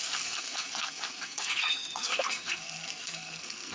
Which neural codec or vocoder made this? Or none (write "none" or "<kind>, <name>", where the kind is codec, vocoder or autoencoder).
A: codec, SNAC